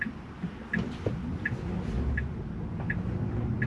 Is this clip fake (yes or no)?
no